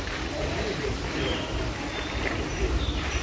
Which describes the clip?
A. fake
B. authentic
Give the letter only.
A